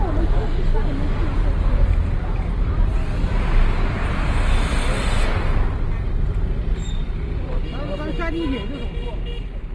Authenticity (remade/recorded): recorded